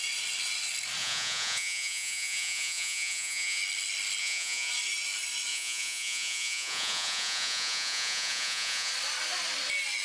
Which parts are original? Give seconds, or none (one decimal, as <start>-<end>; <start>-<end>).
0.0-1.0; 3.6-4.2; 4.7-5.5; 8.9-10.0